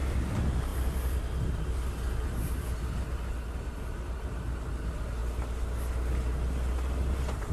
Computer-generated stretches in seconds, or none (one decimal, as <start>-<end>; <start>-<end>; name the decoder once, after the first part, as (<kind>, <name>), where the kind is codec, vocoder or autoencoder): none